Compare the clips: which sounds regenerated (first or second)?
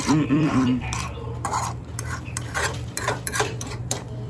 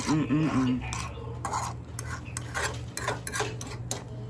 first